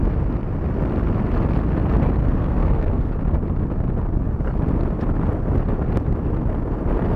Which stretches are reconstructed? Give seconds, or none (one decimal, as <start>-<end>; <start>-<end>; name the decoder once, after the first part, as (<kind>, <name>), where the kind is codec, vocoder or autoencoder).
2.2-3.1 (codec, SNAC)